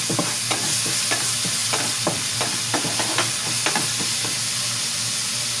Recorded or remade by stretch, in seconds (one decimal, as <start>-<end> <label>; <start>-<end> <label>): 0.0-1.6 recorded; 1.6-2.8 remade; 2.8-5.6 recorded

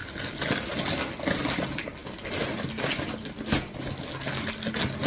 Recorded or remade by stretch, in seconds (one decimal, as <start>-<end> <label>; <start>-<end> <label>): 0.0-5.1 recorded